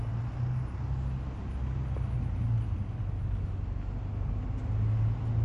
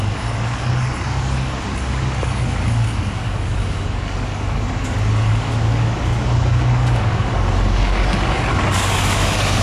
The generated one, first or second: second